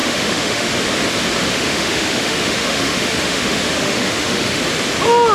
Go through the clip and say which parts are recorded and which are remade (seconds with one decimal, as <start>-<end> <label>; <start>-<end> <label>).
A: 0.0-0.7 remade; 0.7-1.4 recorded; 1.4-4.6 remade; 4.6-5.3 recorded